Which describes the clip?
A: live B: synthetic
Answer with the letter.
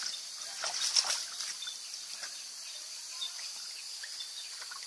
A